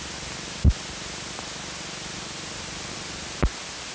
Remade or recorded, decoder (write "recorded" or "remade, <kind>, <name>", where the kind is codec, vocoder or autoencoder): recorded